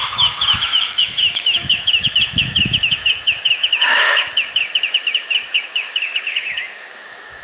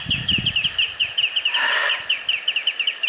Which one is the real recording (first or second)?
second